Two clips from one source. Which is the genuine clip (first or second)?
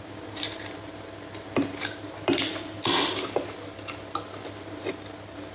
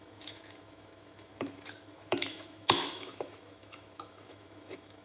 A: first